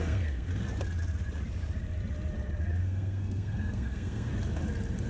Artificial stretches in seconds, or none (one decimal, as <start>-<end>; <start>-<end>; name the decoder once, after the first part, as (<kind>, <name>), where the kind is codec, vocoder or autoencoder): 0.0-0.5 (codec, SNAC); 2.8-4.3